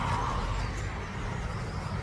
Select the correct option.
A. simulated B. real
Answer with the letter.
B